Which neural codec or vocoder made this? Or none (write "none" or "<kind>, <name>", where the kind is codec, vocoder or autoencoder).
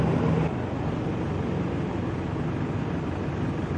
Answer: none